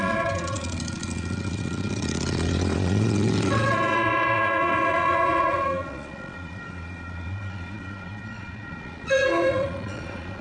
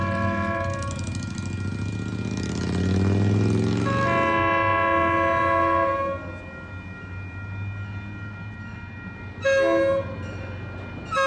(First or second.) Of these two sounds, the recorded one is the second